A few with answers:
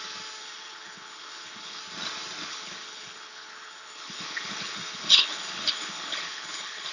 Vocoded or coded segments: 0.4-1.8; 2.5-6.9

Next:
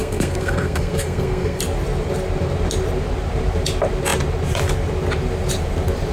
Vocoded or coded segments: 0.0-1.6

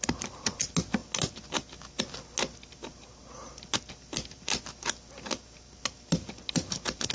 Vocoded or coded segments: none

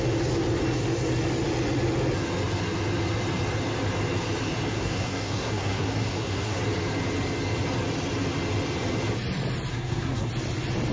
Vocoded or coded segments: 4.7-6.6; 9.7-10.3